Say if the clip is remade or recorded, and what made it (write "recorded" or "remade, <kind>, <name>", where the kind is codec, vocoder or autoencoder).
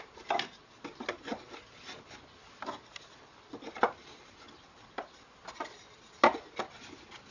recorded